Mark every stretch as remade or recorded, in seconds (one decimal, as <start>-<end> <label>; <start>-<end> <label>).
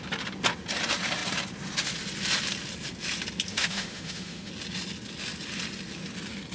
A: 0.0-3.5 recorded; 3.5-4.5 remade; 4.5-6.5 recorded